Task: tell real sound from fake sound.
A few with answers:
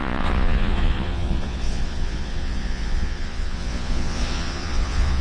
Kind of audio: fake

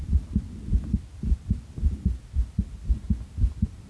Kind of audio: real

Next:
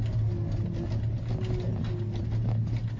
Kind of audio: real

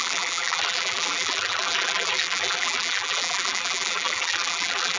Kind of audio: fake